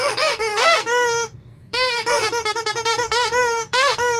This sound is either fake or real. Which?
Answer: fake